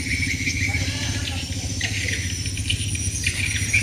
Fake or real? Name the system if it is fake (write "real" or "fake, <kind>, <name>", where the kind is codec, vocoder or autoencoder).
real